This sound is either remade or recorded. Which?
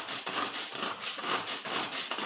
recorded